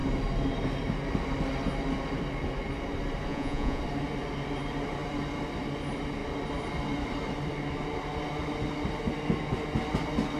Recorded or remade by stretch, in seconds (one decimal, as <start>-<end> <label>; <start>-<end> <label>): 0.0-3.3 recorded; 3.3-3.8 remade; 3.8-10.4 recorded